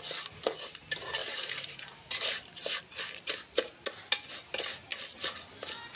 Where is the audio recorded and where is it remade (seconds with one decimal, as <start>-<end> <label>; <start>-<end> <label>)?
0.0-1.2 recorded; 1.2-2.8 remade; 2.8-6.0 recorded